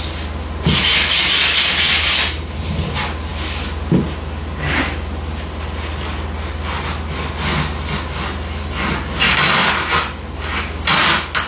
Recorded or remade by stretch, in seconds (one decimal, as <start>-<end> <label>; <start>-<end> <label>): 0.0-11.5 recorded